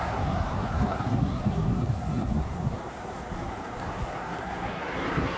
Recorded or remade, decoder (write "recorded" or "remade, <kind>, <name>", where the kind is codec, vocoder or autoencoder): remade, codec, SNAC